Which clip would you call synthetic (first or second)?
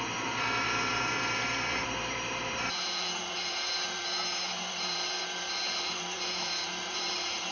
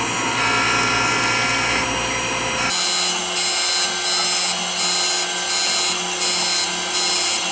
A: first